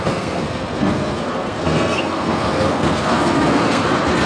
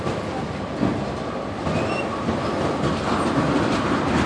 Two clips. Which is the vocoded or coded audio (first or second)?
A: first